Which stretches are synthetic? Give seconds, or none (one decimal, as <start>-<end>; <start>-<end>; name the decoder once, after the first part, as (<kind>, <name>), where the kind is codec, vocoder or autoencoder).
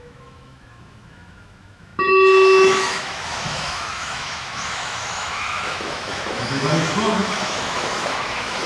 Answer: 0.0-8.7 (autoencoder, DAC-VAE)